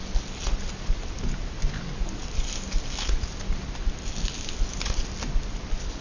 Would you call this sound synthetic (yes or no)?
no